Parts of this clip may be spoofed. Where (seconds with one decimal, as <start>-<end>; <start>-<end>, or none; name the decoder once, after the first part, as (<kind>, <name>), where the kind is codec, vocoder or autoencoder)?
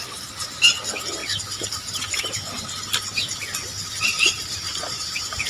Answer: 1.2-2.3 (vocoder, BigVGAN v2); 4.1-4.9